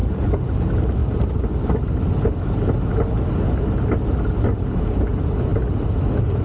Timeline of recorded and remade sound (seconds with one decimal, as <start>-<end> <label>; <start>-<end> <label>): 0.0-0.6 remade; 0.6-6.4 recorded

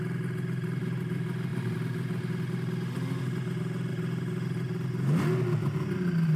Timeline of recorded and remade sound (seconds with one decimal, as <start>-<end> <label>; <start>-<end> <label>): 0.0-6.4 recorded